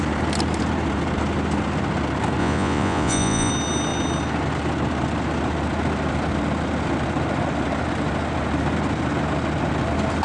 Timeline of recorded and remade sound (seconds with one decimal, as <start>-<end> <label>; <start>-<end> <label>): 0.0-2.4 recorded; 2.4-3.5 remade; 3.5-10.2 recorded